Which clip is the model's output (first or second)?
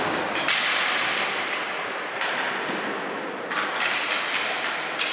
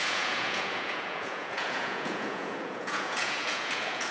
second